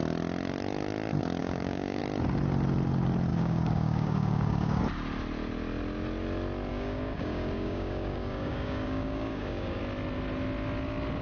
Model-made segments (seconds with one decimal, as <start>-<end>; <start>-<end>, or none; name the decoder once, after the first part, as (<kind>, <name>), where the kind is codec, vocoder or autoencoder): 1.4-2.0 (codec, DAC); 3.3-4.8; 6.7-9.8